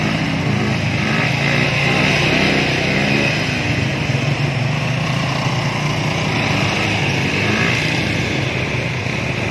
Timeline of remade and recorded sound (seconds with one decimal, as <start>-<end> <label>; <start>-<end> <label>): 0.0-9.5 recorded